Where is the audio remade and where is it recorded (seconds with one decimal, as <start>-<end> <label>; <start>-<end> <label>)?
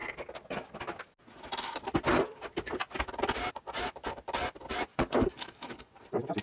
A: 0.0-4.9 recorded; 4.9-5.9 remade; 5.9-6.4 recorded